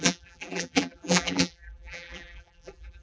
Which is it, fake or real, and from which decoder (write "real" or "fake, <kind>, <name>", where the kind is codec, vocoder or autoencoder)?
fake, vocoder, BigVGAN v2